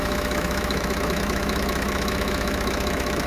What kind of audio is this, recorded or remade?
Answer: remade